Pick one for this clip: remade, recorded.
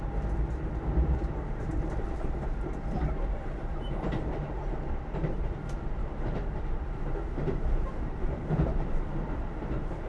remade